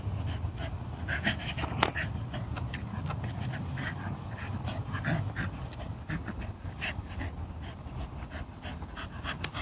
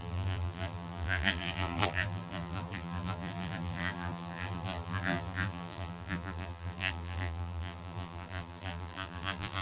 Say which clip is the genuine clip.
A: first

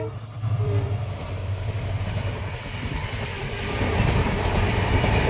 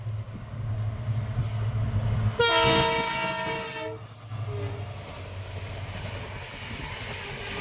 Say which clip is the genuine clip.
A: second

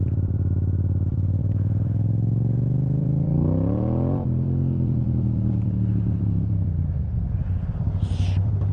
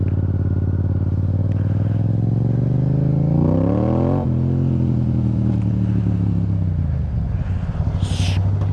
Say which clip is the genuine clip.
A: second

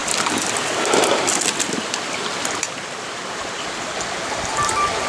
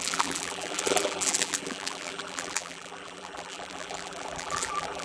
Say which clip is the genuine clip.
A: first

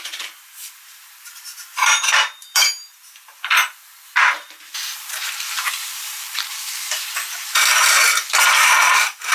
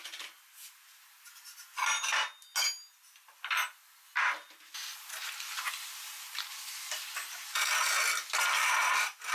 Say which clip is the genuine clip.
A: second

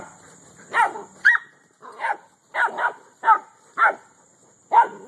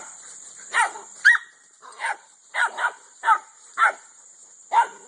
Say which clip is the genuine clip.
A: first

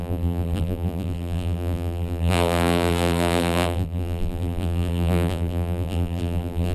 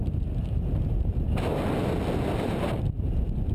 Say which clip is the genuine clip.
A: second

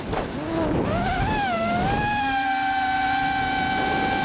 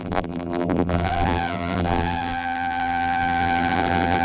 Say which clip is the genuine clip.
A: first